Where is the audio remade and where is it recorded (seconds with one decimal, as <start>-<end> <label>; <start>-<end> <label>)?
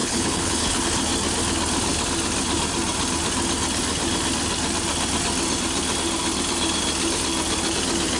0.0-0.8 remade; 0.8-8.2 recorded